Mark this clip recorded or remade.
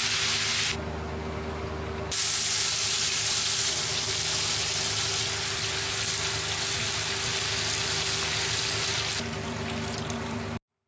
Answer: recorded